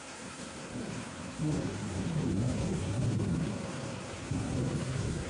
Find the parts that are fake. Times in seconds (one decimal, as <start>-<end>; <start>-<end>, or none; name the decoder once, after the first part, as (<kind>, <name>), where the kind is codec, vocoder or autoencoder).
0.0-5.3 (codec, SNAC)